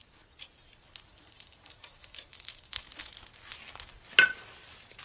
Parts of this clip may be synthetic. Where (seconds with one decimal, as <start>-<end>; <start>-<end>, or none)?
1.1-3.0